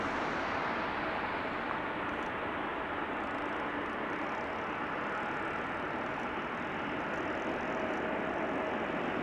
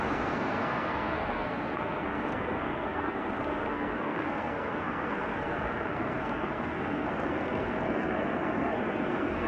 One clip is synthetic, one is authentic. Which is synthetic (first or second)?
second